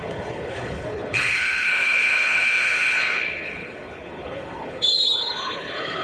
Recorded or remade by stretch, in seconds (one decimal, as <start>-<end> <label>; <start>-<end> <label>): 0.0-6.0 remade